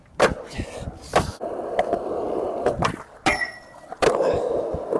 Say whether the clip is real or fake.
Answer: real